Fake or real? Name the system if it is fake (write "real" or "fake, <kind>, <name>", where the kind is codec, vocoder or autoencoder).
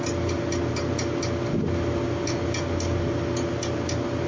real